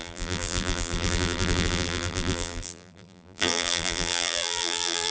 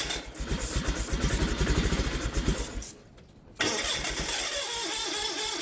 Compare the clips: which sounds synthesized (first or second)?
first